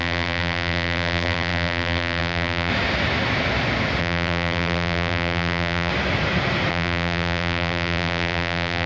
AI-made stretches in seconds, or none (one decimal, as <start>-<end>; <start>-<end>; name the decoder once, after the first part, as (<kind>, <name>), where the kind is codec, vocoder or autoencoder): 0.0-2.7 (vocoder, BigVGAN v2); 4.0-5.9; 6.7-8.9